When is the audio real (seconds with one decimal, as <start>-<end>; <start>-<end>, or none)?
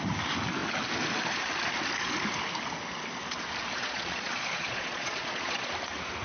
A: 0.0-3.8; 5.7-6.2